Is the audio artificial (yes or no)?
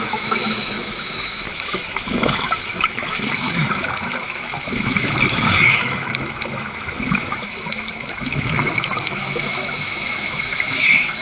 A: yes